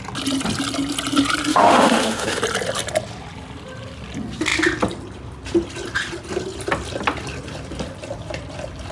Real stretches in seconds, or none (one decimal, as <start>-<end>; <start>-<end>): 0.0-1.5; 2.4-8.9